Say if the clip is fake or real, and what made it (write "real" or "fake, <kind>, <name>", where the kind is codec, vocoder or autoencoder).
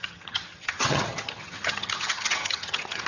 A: fake, vocoder, HiFi-GAN